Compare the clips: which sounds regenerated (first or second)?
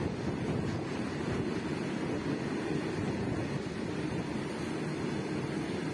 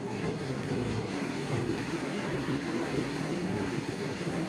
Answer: second